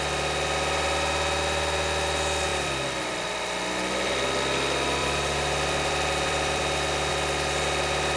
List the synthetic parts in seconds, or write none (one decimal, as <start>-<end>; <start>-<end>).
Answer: 2.5-3.3; 5.0-7.1